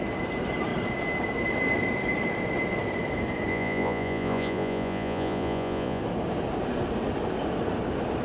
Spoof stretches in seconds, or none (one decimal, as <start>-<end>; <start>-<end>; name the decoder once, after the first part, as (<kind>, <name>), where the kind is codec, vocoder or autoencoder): 3.5-6.0 (vocoder, Vocos)